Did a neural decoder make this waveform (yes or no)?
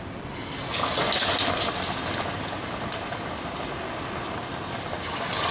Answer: no